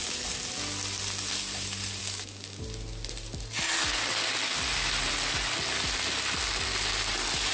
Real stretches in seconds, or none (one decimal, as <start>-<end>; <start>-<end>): 0.0-2.0; 2.6-7.5